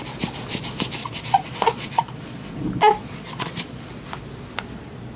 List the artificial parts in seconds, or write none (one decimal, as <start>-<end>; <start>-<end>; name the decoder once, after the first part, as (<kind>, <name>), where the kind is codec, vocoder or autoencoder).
1.0-2.6 (vocoder, Vocos); 3.0-3.9